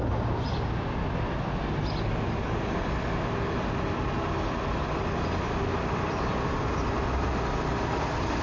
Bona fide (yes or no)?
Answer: yes